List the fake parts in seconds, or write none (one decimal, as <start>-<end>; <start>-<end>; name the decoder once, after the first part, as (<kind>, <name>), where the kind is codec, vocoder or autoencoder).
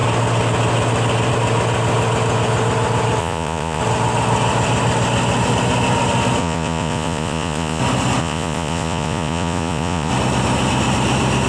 3.2-3.8 (vocoder, Vocos); 6.4-7.8; 8.2-10.1